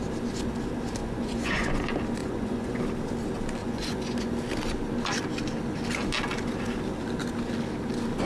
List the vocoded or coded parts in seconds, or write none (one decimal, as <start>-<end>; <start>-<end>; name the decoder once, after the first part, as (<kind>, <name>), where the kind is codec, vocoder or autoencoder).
1.0-1.8 (vocoder, Vocos); 2.2-2.8; 3.6-4.3